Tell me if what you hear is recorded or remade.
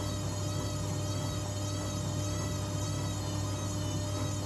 recorded